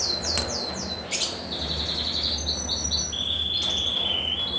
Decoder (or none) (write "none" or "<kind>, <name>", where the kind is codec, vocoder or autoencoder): none